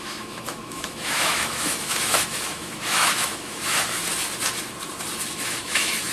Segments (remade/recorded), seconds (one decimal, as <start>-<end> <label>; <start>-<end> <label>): 0.0-4.0 remade; 4.0-5.3 recorded; 5.3-6.1 remade